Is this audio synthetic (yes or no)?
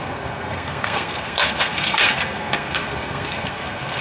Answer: yes